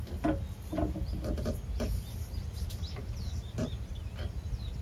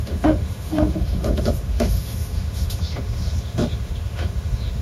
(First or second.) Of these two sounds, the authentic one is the first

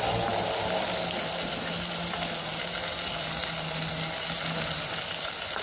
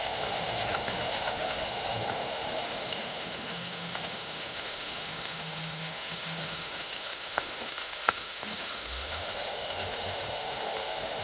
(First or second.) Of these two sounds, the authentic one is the first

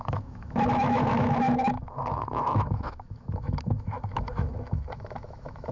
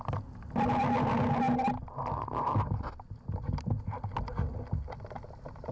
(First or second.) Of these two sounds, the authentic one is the second